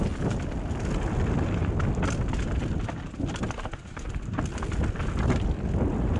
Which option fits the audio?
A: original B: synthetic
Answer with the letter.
A